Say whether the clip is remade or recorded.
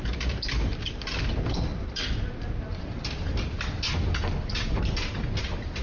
recorded